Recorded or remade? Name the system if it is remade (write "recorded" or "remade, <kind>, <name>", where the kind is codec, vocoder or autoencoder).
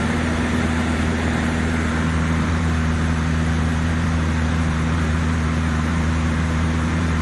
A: remade, vocoder, BigVGAN v2